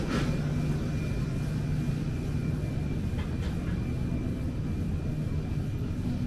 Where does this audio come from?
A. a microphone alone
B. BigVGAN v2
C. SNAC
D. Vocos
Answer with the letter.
A